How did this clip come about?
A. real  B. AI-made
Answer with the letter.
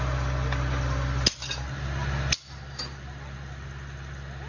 A